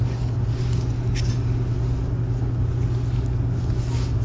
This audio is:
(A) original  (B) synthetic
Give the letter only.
A